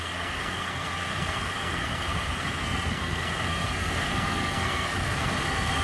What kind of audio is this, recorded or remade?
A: remade